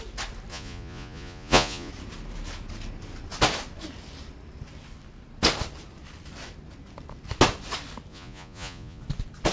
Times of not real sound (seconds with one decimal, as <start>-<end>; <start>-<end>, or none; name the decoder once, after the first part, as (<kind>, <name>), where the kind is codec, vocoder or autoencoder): 0.5-1.9 (vocoder, Vocos); 8.1-9.0

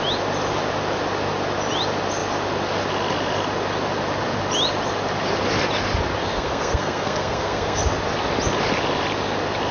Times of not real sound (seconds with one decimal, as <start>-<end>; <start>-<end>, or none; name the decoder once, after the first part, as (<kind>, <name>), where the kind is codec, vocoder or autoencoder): 6.2-7.8 (codec, SNAC)

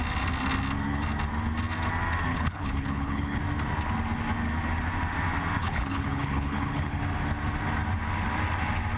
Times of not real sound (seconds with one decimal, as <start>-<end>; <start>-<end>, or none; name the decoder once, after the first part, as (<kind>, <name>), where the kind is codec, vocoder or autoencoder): 2.3-3.4 (codec, HILCodec); 5.6-7.0

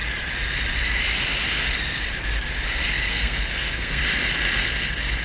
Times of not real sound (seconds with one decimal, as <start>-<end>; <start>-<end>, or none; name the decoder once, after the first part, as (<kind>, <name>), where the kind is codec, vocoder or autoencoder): 3.1-4.0 (codec, SNAC)